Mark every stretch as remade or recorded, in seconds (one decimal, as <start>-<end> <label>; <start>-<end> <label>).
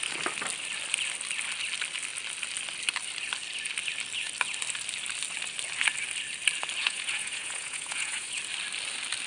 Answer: 0.0-6.8 recorded; 6.8-8.4 remade; 8.4-9.3 recorded